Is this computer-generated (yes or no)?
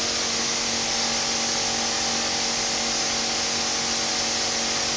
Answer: no